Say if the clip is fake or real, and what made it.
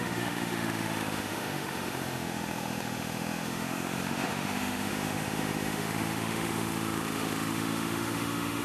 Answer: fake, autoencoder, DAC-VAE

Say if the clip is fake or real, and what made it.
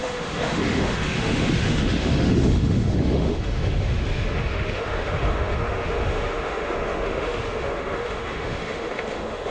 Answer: fake, autoencoder, DAC-VAE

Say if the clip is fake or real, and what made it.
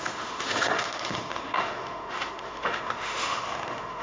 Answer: fake, autoencoder, DAC-VAE